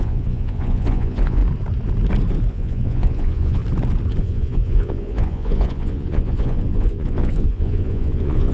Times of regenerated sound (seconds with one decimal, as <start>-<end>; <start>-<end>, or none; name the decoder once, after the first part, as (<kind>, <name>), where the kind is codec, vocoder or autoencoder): 0.0-1.4 (vocoder, Vocos); 2.5-3.6; 4.2-8.5